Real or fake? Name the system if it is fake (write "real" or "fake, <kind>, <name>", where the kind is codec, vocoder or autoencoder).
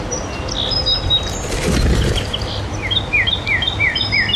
fake, vocoder, BigVGAN v2